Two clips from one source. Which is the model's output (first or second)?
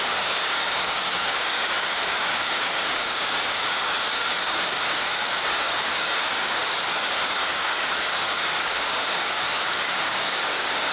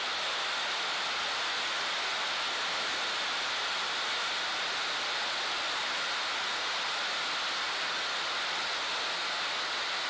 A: first